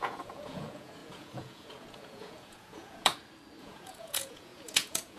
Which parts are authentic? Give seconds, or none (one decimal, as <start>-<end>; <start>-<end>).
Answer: 3.1-3.6

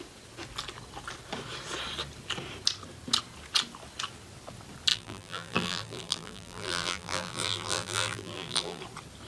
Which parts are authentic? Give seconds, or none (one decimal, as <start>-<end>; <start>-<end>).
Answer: 0.0-4.9; 8.8-9.3

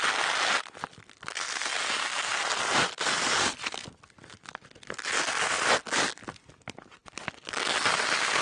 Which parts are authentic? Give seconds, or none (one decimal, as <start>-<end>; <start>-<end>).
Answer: 0.0-2.0; 2.6-8.4

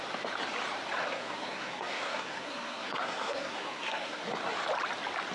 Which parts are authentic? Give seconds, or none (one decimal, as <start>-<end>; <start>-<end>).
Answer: 0.0-1.0; 4.2-5.3